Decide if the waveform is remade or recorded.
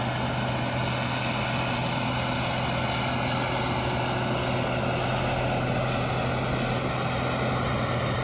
recorded